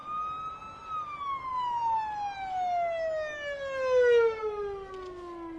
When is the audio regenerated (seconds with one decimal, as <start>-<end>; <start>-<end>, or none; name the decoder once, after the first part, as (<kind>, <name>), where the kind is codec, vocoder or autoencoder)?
none